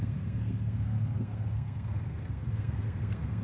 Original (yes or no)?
no